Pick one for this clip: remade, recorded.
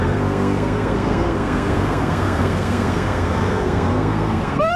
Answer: remade